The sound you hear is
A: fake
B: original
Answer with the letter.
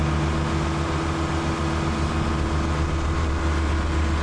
B